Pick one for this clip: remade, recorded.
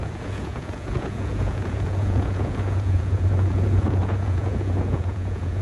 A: remade